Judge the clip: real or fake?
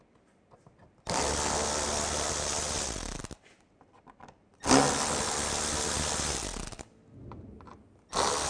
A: real